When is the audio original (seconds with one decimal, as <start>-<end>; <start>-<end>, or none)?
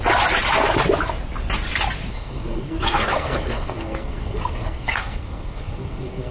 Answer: 0.0-2.1